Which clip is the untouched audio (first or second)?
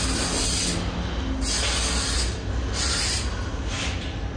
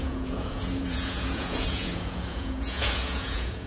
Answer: first